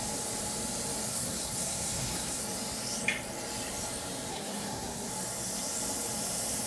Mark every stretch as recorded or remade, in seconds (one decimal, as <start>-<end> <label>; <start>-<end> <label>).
0.0-1.1 recorded; 1.1-2.4 remade; 2.4-4.3 recorded; 4.3-5.1 remade; 5.1-6.7 recorded